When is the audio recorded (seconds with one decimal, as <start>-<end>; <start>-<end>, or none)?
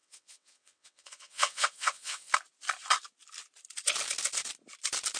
2.3-5.2